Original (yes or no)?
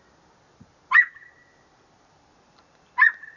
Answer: yes